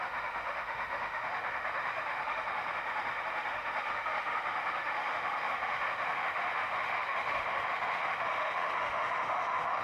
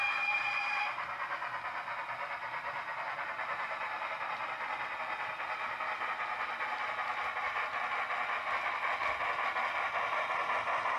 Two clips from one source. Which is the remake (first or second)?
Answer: first